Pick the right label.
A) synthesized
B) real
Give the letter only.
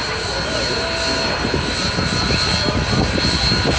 B